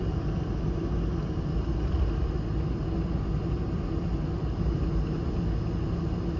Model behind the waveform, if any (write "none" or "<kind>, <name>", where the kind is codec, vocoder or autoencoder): none